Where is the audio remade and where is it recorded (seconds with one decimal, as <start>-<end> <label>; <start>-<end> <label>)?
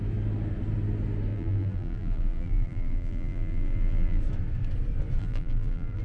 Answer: 0.0-1.3 recorded; 1.3-4.2 remade; 4.2-5.2 recorded; 5.2-6.0 remade